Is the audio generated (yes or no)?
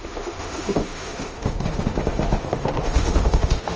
yes